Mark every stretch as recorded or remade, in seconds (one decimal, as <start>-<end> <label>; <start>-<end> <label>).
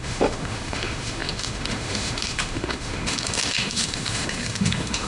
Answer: 0.0-5.1 remade